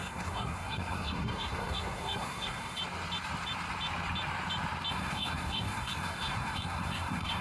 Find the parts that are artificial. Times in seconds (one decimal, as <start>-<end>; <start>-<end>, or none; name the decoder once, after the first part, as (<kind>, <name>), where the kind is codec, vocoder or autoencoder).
0.0-2.8 (codec, SNAC); 4.9-7.4